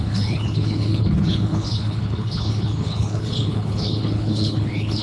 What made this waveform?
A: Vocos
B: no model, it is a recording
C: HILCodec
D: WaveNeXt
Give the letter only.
C